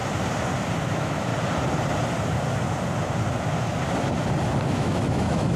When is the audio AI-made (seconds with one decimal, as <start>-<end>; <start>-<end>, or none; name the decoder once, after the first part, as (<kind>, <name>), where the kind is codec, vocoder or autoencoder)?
0.9-1.3 (autoencoder, DAC-VAE); 4.7-5.6